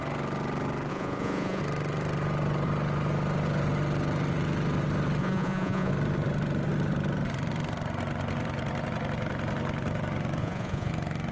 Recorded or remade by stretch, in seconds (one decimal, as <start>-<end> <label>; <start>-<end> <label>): 0.0-0.9 recorded; 0.9-1.6 remade; 1.6-5.2 recorded; 5.2-5.9 remade; 5.9-10.4 recorded; 10.4-10.9 remade; 10.9-11.3 recorded